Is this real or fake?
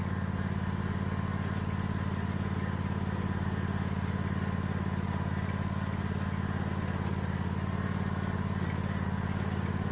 real